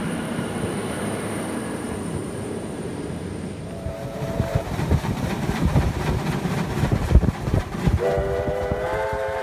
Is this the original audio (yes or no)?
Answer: no